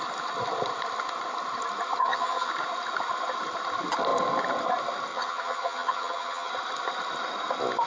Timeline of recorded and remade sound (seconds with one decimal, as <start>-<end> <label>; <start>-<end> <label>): 0.0-2.0 recorded; 2.0-2.5 remade; 2.5-5.1 recorded; 5.1-6.5 remade; 6.5-7.9 recorded